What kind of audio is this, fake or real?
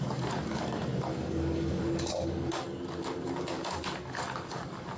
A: fake